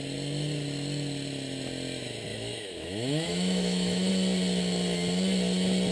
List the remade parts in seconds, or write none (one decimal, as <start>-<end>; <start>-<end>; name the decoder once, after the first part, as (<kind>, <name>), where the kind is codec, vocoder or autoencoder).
2.3-4.1 (autoencoder, DAC-VAE)